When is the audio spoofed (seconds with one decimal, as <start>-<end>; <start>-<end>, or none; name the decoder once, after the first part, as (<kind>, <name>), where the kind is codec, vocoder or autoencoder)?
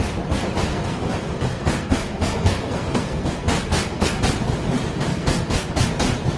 0.7-4.2 (codec, SNAC); 5.1-5.7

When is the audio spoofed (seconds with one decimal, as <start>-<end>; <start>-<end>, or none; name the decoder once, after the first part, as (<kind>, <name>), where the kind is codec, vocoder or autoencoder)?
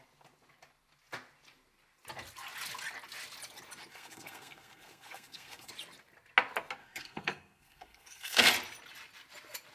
3.9-5.7 (codec, SNAC); 6.8-8.5